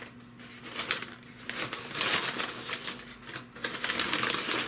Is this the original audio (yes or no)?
yes